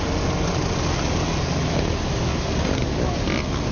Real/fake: real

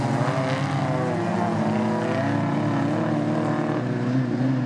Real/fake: real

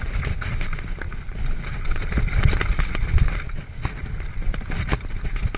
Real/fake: real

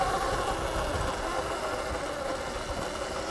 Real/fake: real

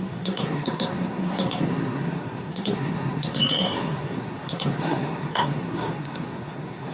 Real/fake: fake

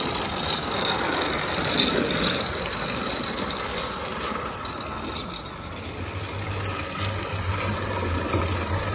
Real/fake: real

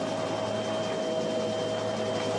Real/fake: real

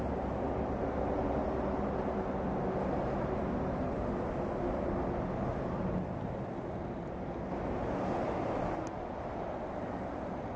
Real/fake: real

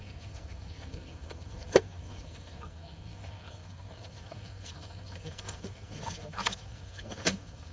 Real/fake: fake